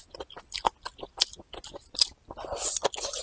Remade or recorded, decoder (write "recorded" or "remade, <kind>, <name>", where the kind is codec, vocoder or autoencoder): recorded